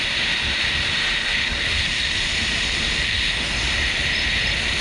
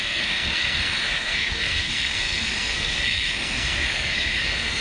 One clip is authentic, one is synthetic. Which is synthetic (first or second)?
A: second